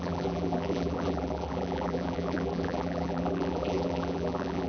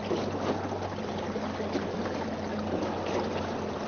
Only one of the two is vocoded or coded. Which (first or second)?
first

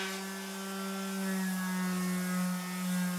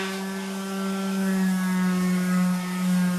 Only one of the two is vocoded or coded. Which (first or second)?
second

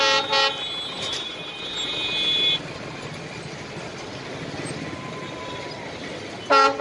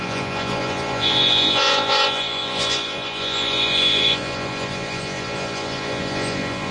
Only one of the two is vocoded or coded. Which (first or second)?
second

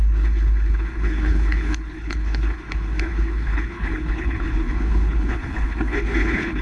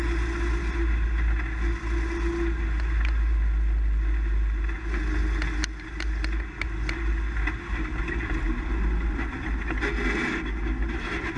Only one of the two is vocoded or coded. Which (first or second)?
first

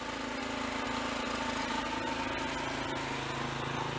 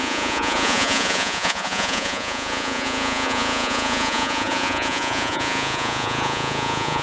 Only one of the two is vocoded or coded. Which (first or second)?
second